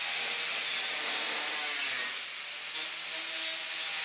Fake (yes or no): no